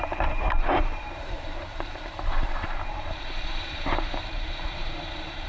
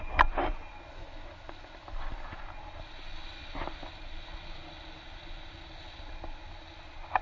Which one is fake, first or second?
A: first